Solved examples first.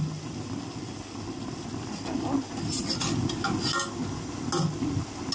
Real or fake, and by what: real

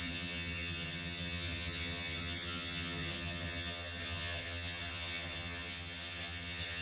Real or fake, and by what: fake, vocoder, HiFi-GAN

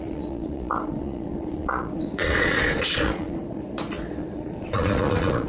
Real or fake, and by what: fake, vocoder, Vocos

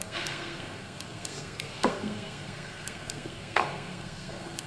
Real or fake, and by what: fake, codec, SNAC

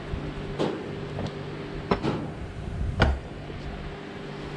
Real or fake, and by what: real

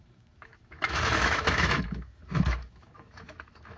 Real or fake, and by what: fake, autoencoder, DAC-VAE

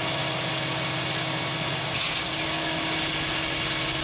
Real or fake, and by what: real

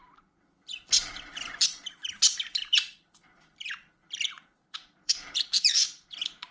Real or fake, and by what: fake, vocoder, BigVGAN v2